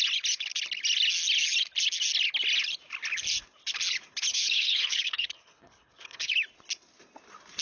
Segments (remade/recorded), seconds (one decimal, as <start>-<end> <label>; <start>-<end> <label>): 0.0-4.3 recorded; 4.3-6.3 remade; 6.3-7.6 recorded